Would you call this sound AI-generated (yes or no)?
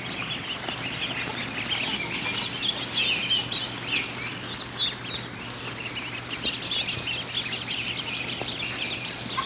no